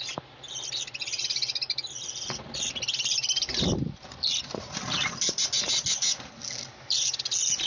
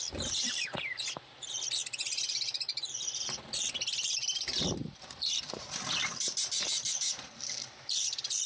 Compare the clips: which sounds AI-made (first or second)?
second